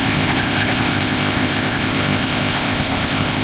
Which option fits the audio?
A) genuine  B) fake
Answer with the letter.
B